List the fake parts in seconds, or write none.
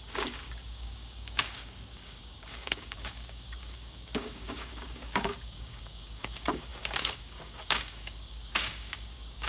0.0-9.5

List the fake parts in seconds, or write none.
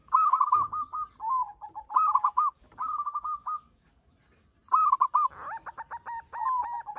0.0-1.1; 2.2-3.9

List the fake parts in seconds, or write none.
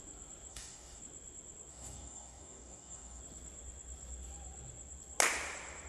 0.5-1.0; 1.7-3.2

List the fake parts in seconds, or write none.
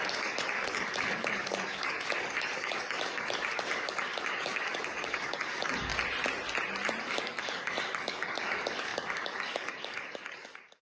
0.0-5.9; 7.0-11.0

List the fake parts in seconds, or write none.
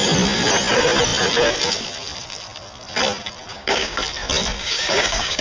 3.5-4.0; 4.6-5.4